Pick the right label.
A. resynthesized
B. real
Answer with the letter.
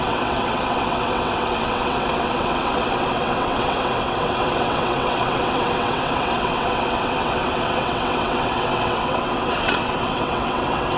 A